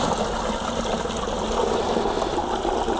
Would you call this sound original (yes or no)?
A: yes